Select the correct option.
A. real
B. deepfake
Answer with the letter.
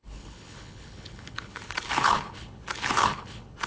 B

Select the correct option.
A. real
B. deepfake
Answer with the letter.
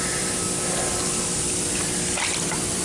A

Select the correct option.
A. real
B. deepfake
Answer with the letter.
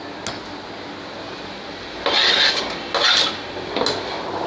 A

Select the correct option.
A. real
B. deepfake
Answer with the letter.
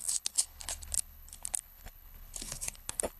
B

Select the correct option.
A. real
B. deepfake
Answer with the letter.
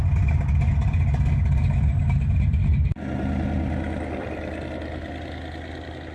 A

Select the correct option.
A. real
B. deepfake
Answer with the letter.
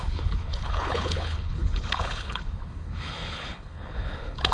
B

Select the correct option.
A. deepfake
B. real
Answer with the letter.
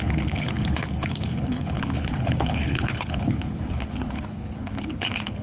A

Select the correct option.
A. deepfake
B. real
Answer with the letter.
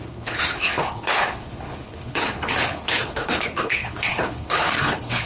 A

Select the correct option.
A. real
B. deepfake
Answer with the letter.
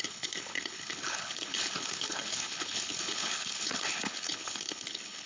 B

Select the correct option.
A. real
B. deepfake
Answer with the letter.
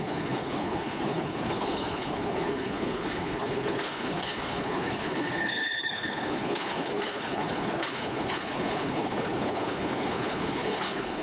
B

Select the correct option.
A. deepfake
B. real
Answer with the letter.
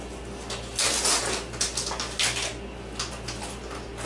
B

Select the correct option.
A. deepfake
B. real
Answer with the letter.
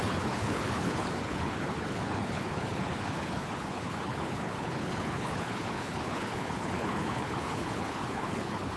A